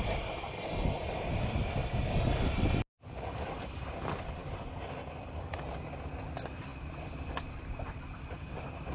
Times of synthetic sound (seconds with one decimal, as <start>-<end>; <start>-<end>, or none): 6.7-7.6

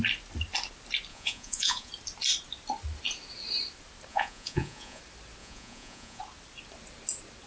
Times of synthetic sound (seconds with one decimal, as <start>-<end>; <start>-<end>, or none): 1.1-1.9; 4.1-5.0; 5.4-6.2

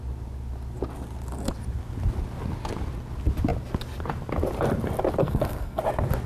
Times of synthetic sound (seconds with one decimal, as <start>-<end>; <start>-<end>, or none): 5.2-5.8

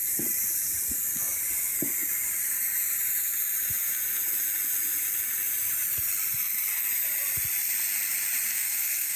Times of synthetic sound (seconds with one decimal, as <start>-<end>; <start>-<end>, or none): 8.5-9.2

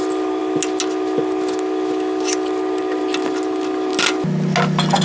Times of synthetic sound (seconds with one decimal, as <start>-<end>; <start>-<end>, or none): none